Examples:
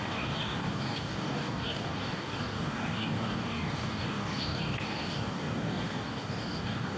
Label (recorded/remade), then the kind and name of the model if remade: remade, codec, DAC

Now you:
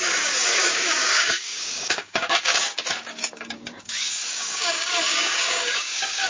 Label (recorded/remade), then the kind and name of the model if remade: remade, codec, DAC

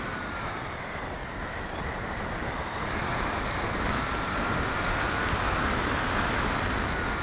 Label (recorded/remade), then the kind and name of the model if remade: recorded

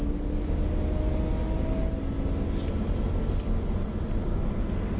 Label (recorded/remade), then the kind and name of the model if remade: recorded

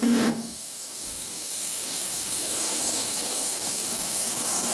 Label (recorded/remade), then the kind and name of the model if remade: remade, codec, DAC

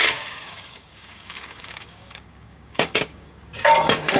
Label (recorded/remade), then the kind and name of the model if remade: remade, codec, DAC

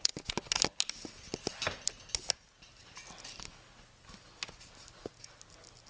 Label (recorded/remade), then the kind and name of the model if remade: recorded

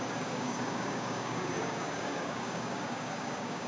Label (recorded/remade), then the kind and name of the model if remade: remade, codec, DAC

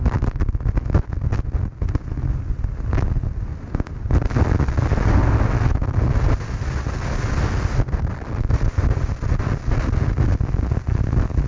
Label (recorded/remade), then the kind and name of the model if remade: recorded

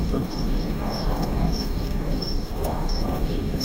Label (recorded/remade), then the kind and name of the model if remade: remade, codec, DAC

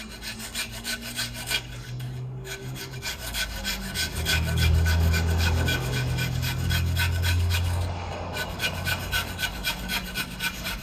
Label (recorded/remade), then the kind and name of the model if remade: remade, codec, DAC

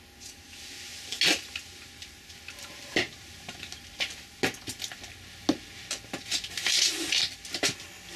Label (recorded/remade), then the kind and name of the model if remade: recorded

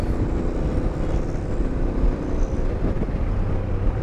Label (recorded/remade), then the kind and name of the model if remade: recorded